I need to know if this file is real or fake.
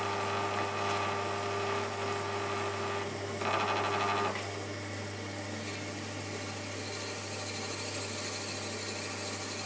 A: real